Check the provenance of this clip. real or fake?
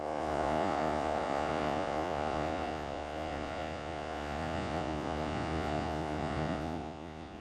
fake